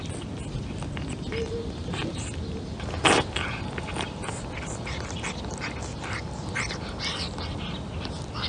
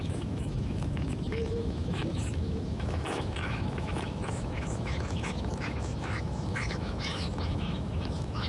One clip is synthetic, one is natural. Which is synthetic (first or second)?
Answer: second